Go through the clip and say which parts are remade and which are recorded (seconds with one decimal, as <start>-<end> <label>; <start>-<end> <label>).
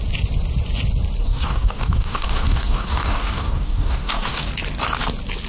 0.0-1.2 recorded; 1.2-4.5 remade; 4.5-5.5 recorded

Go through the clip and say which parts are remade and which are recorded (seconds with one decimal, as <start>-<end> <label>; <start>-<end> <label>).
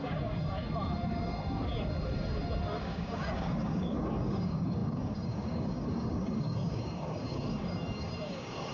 0.0-0.6 remade; 0.6-2.8 recorded; 2.8-8.7 remade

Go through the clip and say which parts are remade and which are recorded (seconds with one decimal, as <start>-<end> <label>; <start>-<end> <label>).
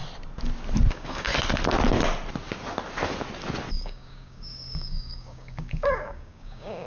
0.0-0.9 recorded; 0.9-1.3 remade; 1.3-3.7 recorded; 3.7-6.9 remade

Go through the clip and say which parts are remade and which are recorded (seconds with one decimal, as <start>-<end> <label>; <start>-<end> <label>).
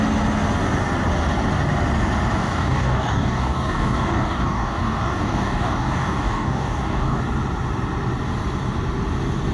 0.0-2.4 recorded; 2.4-7.2 remade; 7.2-9.5 recorded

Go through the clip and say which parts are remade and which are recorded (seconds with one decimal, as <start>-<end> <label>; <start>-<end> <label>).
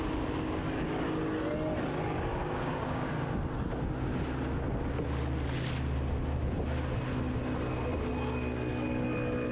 0.0-2.3 recorded; 2.3-3.1 remade; 3.1-9.5 recorded